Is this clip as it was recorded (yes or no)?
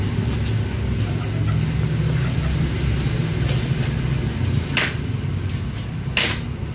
yes